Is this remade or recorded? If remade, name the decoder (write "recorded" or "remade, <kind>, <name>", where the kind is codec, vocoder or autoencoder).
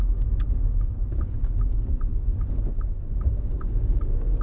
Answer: recorded